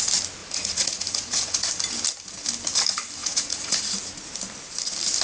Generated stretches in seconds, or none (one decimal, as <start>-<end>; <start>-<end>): 0.4-1.7; 3.2-3.8